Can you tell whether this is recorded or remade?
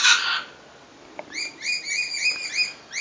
recorded